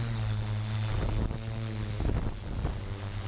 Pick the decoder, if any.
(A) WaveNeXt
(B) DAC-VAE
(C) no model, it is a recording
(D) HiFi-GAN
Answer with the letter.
C